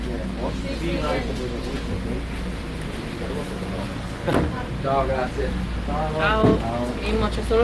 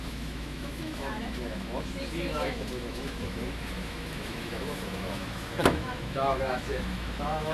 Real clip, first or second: first